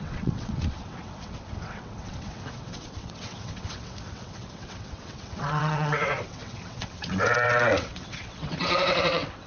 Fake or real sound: fake